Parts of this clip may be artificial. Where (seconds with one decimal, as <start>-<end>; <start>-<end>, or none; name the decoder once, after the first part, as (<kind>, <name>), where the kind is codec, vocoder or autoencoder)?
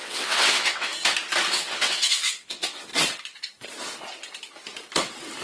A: 0.0-0.9 (vocoder, WaveNeXt); 1.5-2.9